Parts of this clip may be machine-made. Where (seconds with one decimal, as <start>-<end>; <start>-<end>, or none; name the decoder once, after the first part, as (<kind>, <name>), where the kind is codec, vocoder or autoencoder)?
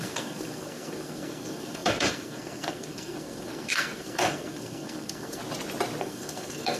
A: 0.0-5.4 (codec, SNAC); 6.0-6.8